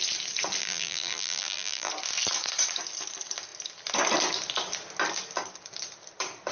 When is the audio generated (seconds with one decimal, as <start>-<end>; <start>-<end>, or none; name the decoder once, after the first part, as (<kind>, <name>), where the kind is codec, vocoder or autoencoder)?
0.6-1.9 (vocoder, BigVGAN v2)